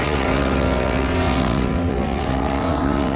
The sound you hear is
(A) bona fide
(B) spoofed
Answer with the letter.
B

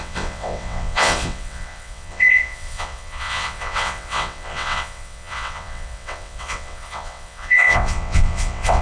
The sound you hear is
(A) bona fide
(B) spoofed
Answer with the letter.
B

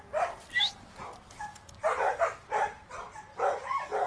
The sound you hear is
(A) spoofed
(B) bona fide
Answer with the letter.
B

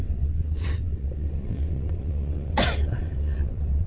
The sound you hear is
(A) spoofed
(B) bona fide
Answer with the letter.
A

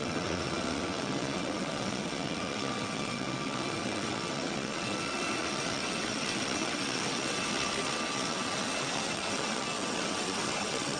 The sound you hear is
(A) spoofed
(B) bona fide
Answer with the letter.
A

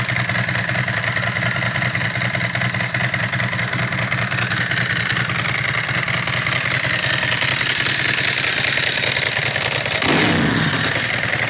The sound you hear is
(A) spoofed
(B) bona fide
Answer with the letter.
B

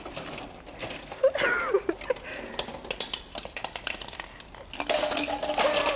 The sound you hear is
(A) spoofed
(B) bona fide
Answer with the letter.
B